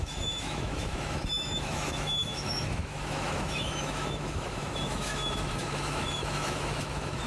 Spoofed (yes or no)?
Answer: yes